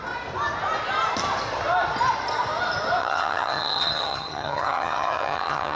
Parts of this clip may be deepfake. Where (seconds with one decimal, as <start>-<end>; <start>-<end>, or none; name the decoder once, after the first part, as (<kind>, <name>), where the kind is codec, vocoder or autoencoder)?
3.0-5.8 (vocoder, HiFi-GAN)